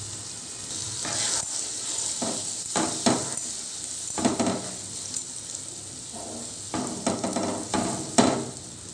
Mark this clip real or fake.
real